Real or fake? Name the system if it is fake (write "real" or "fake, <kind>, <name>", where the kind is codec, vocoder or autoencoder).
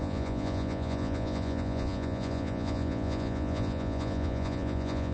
fake, vocoder, Vocos